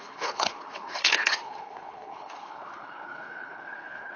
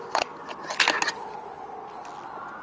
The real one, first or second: second